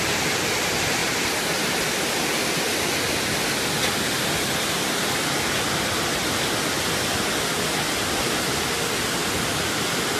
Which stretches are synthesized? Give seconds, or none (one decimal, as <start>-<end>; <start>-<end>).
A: 9.2-10.2